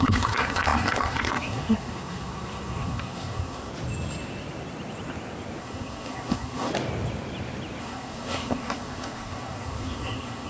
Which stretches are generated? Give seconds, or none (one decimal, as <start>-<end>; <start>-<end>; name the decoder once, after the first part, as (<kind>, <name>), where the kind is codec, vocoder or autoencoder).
0.0-3.7 (codec, SNAC); 5.6-6.7; 7.8-10.5